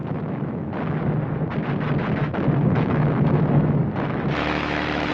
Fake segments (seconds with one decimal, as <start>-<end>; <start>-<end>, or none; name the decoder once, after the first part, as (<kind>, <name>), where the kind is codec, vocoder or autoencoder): 0.0-0.7 (autoencoder, DAC-VAE); 2.2-5.1